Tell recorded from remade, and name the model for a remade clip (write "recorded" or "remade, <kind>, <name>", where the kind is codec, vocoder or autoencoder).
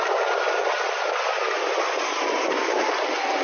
recorded